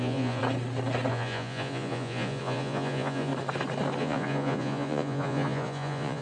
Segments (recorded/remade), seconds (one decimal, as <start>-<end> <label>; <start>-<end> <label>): 0.0-0.4 remade; 0.4-1.1 recorded; 1.1-3.3 remade; 3.3-4.0 recorded; 4.0-6.2 remade